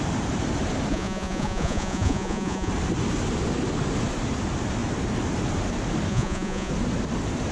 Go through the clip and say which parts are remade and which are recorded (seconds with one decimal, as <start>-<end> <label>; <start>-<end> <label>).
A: 0.0-0.9 recorded; 0.9-2.7 remade; 2.7-6.1 recorded; 6.1-6.7 remade; 6.7-7.5 recorded